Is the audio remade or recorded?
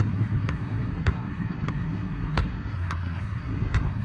remade